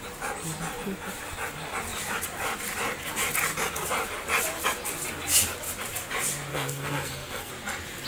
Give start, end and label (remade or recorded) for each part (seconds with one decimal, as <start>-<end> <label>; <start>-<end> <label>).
0.0-6.5 recorded; 6.5-7.5 remade; 7.5-8.1 recorded